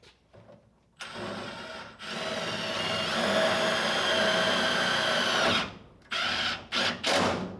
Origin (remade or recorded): recorded